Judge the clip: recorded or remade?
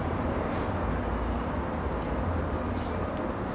recorded